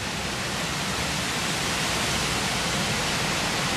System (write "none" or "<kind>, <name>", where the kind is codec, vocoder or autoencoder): none